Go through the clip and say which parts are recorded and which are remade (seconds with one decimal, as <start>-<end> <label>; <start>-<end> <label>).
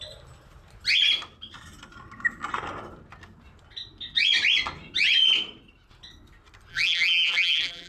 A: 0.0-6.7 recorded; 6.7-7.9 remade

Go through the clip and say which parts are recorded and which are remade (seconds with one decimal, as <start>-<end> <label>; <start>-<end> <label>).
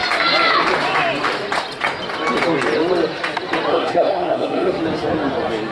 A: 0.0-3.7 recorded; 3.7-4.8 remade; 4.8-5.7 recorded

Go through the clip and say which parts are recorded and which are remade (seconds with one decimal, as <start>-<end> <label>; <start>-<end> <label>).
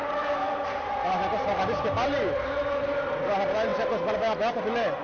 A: 0.0-5.0 recorded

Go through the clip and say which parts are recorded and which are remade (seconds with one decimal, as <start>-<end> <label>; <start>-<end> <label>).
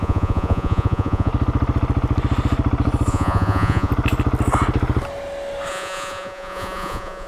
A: 0.0-1.3 remade; 1.3-3.1 recorded; 3.1-3.9 remade; 3.9-5.7 recorded; 5.7-7.3 remade